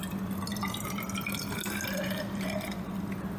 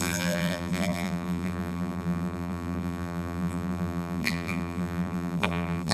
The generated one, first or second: second